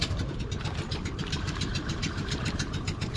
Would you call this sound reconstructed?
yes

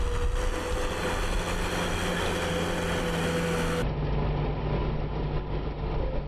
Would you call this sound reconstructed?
no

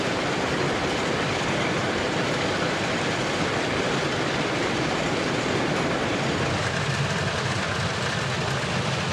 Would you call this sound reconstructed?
no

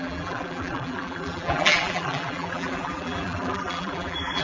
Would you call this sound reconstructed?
yes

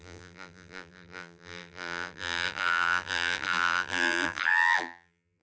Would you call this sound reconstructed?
yes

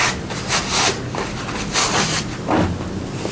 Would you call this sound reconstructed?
no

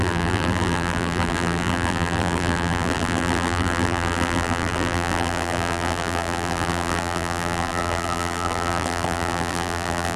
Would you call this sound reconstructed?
yes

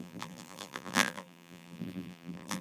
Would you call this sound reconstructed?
yes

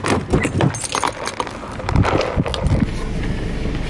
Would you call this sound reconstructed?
no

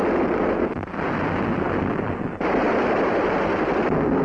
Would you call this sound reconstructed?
no